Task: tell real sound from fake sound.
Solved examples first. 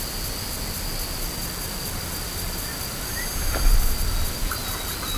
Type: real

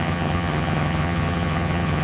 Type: fake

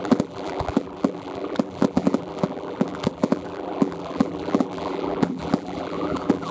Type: fake